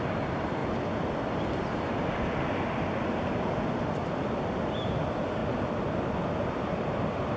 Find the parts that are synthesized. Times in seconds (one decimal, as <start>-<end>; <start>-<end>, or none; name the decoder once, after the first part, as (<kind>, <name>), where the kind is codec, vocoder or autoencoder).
0.0-0.6 (vocoder, BigVGAN v2); 3.7-5.4; 6.7-7.4